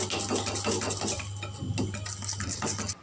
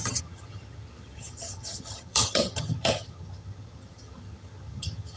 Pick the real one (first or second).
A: first